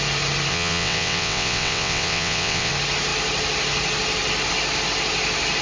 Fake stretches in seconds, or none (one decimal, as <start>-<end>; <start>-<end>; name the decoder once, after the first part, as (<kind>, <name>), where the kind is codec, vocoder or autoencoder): 0.5-2.7 (vocoder, WaveNeXt)